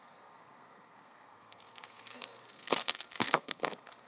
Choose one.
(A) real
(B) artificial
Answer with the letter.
B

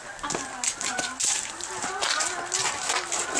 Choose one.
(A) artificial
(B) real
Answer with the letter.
B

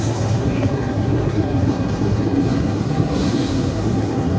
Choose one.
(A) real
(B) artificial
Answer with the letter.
B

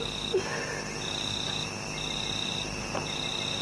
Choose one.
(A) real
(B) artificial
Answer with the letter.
A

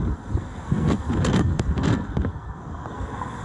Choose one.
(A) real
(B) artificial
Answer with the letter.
B